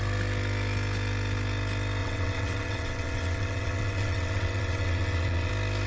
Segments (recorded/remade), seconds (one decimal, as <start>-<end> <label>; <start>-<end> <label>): 0.0-2.0 recorded; 2.0-5.5 remade; 5.5-5.9 recorded